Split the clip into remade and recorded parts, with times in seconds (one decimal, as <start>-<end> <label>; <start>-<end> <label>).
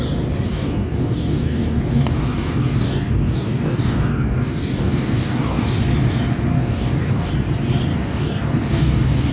0.0-0.5 recorded; 0.5-5.6 remade; 5.6-6.5 recorded; 6.5-7.3 remade; 7.3-7.9 recorded; 7.9-9.3 remade